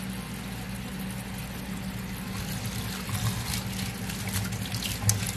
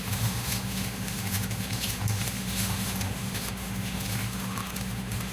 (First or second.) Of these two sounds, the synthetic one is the second